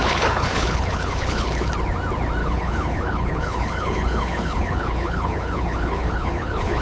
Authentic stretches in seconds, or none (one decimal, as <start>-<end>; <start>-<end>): 1.7-2.4